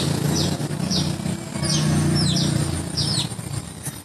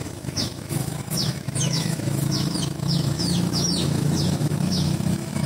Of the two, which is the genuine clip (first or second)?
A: first